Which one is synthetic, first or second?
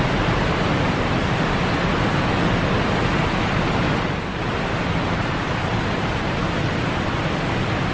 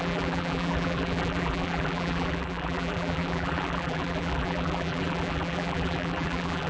second